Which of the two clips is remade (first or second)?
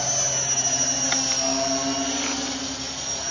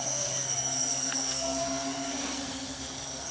second